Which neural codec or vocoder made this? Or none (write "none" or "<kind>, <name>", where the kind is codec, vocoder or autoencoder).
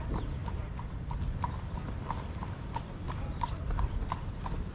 none